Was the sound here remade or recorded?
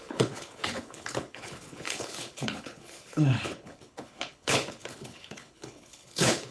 remade